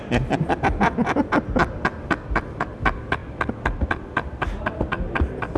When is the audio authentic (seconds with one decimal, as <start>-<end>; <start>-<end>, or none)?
0.0-1.9; 2.6-5.6